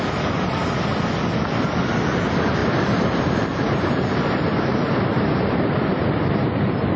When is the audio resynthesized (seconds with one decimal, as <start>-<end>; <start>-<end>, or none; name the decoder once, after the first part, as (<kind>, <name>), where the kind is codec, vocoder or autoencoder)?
0.0-0.6 (vocoder, BigVGAN v2); 2.0-7.0